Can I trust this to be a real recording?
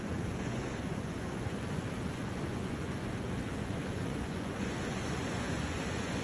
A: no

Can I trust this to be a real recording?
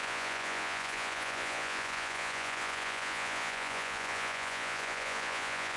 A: no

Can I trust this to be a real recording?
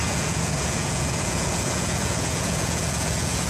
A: no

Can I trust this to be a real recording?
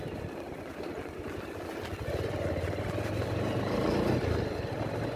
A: yes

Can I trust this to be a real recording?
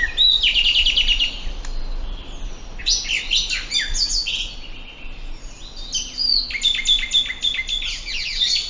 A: yes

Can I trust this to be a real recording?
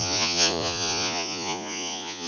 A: no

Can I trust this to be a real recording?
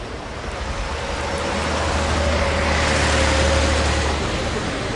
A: yes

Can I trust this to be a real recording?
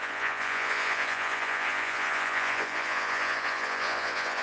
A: no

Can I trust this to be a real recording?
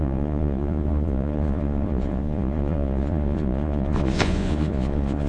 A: no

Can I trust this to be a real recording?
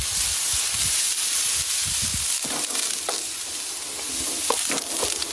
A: yes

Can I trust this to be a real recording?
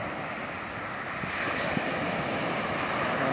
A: yes